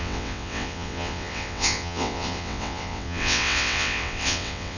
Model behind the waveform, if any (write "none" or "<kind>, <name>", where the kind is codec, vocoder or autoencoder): vocoder, WaveNeXt